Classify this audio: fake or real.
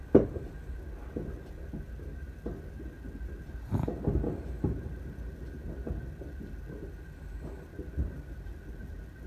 real